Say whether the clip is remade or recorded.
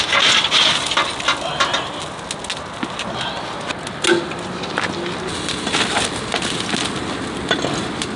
recorded